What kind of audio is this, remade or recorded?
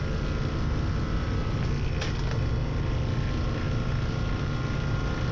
recorded